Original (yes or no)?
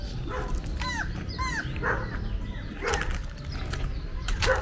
yes